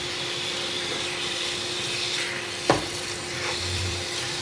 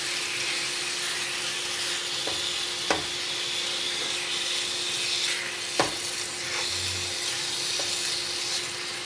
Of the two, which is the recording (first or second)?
second